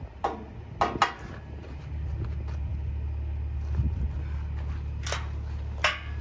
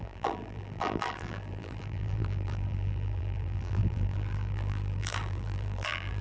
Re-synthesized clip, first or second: second